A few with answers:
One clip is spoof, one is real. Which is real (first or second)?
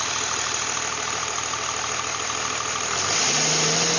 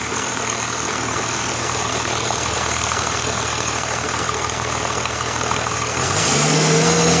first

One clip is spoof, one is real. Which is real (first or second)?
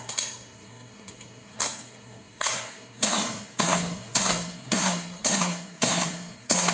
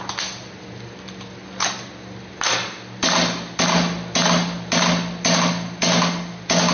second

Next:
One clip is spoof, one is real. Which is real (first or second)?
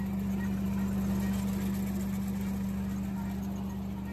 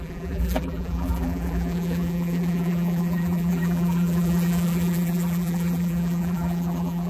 first